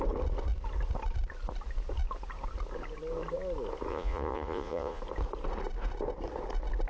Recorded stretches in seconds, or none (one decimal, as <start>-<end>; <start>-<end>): 0.0-3.9; 5.0-6.9

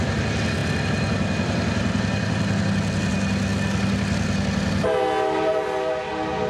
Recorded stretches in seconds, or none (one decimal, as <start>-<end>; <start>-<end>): 0.0-6.5

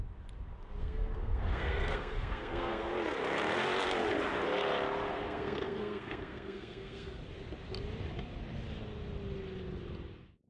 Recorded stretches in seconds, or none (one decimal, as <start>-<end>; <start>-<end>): 0.0-0.8; 2.9-5.1; 7.2-10.5

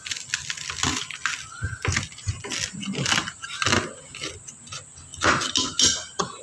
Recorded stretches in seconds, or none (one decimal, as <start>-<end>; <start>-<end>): 0.0-6.4

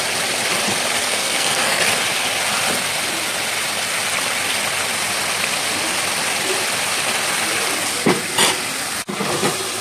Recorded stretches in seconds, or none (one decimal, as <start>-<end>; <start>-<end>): 0.0-1.0; 1.8-9.8

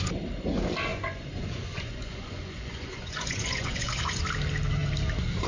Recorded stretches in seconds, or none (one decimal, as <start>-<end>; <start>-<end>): 0.0-0.9; 4.2-5.5

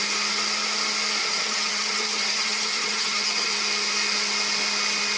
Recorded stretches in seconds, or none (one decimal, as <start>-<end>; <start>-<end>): 0.0-1.2; 3.5-5.2

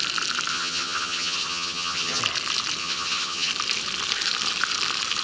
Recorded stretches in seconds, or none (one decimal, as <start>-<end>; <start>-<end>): 0.0-0.5; 2.2-2.8; 3.5-5.2